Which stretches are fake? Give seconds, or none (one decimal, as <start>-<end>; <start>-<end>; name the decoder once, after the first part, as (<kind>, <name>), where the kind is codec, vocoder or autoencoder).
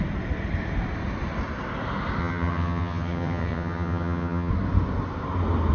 2.2-4.5 (vocoder, HiFi-GAN)